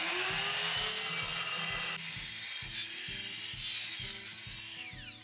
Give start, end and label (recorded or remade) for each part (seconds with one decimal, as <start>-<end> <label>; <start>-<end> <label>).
0.0-5.2 recorded